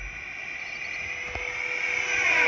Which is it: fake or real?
real